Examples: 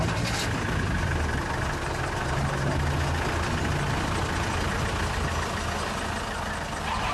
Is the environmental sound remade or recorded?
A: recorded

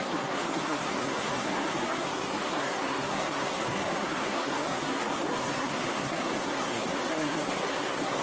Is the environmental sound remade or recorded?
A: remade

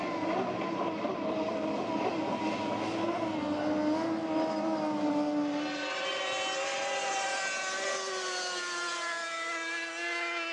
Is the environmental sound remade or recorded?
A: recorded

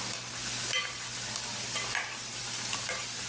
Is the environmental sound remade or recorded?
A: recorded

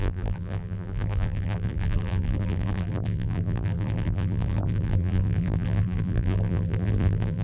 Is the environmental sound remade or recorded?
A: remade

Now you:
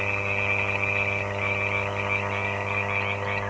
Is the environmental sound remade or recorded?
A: recorded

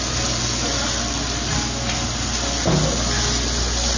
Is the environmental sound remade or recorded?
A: recorded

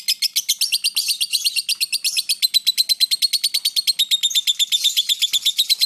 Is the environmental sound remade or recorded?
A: recorded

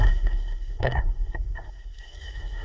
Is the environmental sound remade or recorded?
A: remade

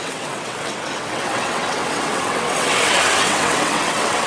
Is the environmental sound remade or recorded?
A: remade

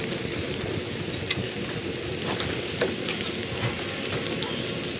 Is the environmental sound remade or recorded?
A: recorded